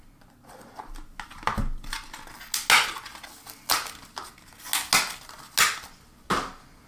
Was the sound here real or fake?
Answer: real